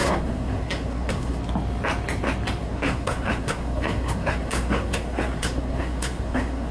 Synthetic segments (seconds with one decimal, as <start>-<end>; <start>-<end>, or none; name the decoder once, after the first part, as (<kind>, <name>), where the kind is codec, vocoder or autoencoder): 0.0-1.4 (codec, SNAC); 2.6-6.7